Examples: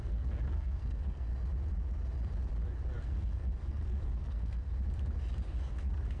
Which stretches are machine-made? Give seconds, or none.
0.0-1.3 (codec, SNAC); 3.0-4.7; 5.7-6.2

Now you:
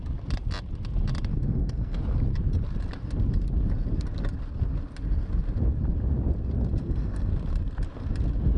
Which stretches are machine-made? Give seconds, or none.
1.3-2.0 (codec, SNAC); 6.8-7.3

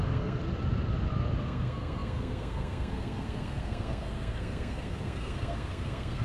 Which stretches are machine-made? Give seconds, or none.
0.0-0.4 (codec, SNAC); 1.4-6.2